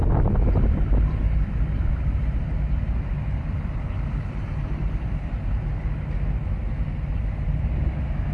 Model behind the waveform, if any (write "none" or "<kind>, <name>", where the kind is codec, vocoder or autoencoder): none